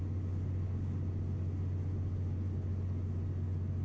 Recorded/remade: recorded